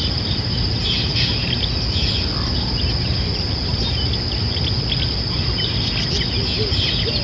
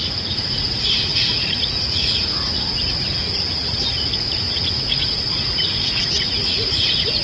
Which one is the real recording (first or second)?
first